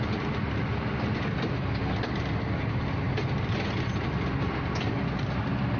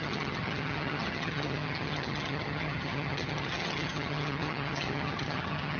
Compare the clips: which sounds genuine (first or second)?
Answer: first